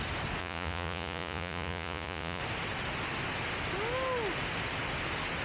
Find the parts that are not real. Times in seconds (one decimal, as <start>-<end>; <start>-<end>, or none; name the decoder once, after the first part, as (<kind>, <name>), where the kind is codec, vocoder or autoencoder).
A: 0.4-2.4 (vocoder, Vocos)